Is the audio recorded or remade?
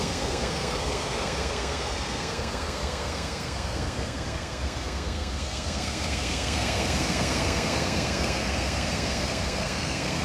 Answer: remade